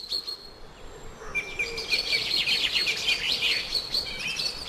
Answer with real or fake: real